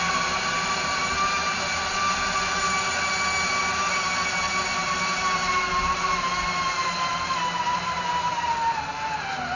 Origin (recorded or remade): recorded